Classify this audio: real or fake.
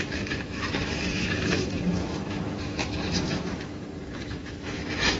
fake